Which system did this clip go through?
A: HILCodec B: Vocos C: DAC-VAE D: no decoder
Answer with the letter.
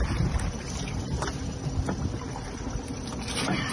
D